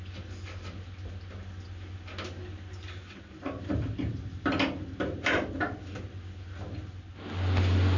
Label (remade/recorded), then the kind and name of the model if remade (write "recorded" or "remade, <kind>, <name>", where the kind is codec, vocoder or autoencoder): recorded